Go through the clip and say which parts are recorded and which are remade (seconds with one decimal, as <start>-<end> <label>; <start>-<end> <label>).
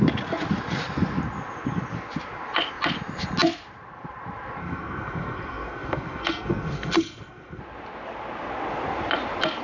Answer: 0.0-4.6 recorded; 4.6-7.6 remade; 7.6-9.6 recorded